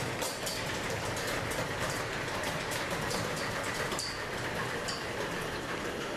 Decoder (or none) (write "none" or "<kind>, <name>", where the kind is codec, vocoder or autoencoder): vocoder, BigVGAN v2